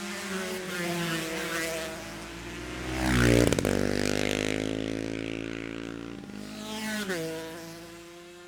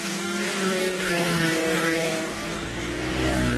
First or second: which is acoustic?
first